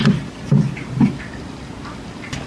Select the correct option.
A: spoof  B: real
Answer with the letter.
B